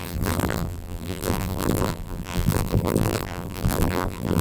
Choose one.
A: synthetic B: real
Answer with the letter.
A